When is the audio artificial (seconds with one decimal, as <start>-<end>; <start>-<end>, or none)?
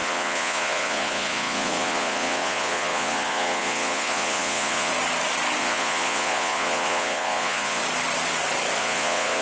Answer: 0.0-4.9; 5.6-7.8; 8.8-9.4